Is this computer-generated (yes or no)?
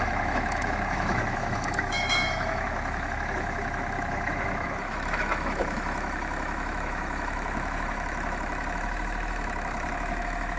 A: yes